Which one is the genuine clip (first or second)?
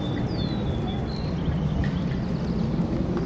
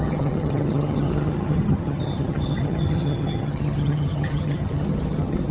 first